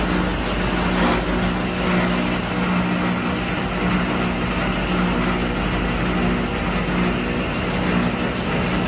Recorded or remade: recorded